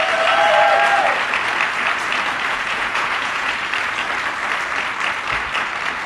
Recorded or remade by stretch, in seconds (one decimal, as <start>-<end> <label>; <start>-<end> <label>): 0.0-2.5 recorded; 2.5-3.5 remade; 3.5-6.1 recorded